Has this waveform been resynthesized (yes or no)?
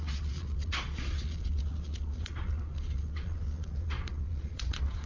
yes